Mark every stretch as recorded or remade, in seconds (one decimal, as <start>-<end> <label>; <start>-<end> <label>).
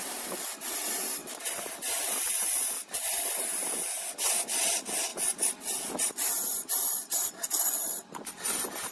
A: 0.0-1.2 recorded; 1.2-3.2 remade; 3.2-5.1 recorded; 5.1-5.9 remade; 5.9-8.9 recorded